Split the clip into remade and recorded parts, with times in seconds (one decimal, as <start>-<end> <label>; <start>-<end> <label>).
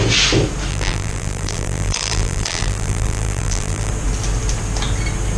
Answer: 0.0-0.7 recorded; 0.7-3.9 remade; 3.9-5.4 recorded